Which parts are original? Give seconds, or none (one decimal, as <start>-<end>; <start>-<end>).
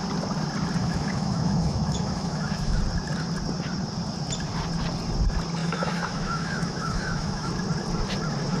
0.0-0.8; 2.8-5.6; 7.5-8.6